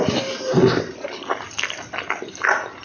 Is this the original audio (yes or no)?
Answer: yes